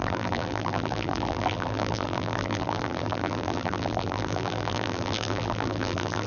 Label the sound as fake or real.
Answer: fake